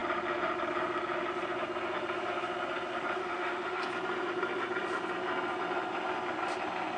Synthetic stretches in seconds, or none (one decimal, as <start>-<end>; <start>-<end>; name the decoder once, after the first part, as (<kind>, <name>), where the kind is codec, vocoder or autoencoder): 3.2-3.8 (autoencoder, DAC-VAE)